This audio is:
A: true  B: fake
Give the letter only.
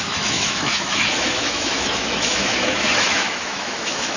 B